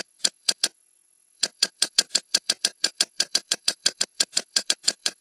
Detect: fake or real fake